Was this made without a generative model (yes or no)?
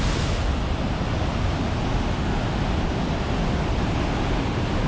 yes